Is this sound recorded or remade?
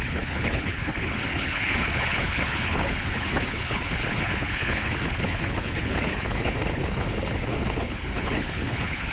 remade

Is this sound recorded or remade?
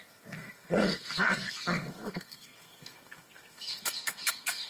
remade